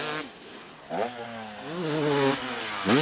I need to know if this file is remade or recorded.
recorded